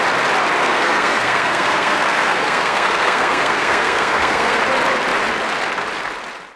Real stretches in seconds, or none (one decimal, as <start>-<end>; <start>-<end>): 0.0-0.6; 4.6-6.6